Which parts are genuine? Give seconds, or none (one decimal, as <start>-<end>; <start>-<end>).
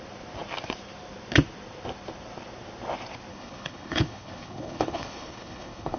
0.0-3.3